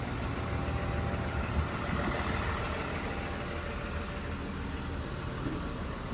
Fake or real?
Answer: real